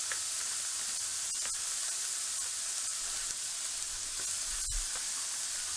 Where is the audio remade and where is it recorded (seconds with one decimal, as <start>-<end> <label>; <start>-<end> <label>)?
0.0-5.8 recorded